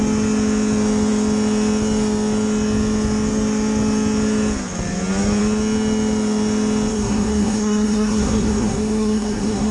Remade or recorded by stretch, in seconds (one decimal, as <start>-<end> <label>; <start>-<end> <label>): 0.0-6.9 recorded; 6.9-9.7 remade